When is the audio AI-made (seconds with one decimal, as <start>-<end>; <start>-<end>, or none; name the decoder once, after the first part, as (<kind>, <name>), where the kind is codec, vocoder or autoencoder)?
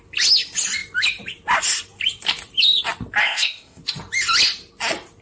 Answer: 3.2-3.8 (codec, ZipCodec)